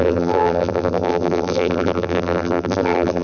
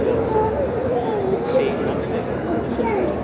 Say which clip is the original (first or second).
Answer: second